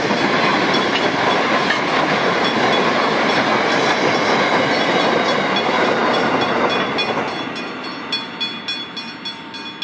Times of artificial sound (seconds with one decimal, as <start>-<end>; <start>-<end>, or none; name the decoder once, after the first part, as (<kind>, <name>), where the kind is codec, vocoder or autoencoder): none